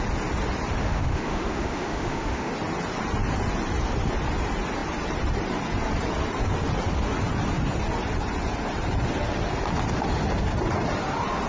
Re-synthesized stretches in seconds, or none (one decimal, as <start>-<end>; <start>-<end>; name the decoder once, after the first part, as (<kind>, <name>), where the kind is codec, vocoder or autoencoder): 0.8-2.5 (autoencoder, DAC-VAE)